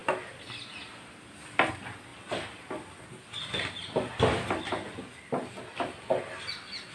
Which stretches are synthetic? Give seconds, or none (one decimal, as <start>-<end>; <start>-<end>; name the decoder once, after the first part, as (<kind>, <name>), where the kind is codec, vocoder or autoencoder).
none